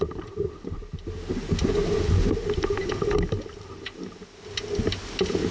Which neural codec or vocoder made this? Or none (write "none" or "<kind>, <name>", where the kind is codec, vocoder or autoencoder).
none